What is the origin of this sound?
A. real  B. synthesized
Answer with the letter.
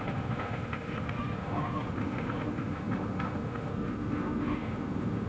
B